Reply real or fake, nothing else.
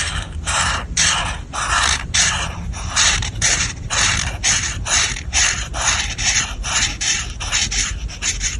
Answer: fake